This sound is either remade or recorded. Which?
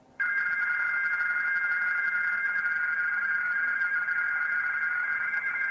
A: remade